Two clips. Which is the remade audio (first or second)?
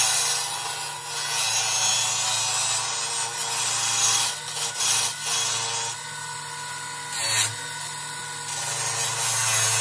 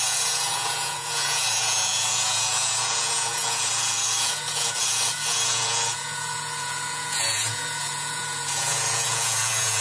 second